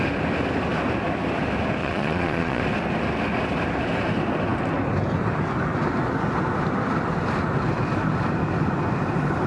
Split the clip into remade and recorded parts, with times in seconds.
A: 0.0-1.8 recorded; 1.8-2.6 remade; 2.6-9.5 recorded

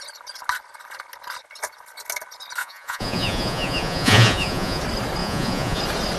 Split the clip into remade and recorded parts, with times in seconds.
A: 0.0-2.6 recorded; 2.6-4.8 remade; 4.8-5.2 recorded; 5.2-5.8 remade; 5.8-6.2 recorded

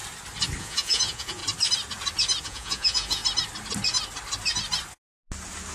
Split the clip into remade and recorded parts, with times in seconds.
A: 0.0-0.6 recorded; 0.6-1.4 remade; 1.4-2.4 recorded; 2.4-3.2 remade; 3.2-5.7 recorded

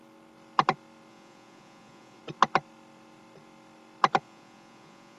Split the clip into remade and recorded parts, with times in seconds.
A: 0.0-1.1 recorded; 1.1-2.2 remade; 2.2-4.2 recorded; 4.2-5.2 remade